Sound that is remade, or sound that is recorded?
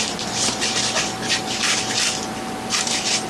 recorded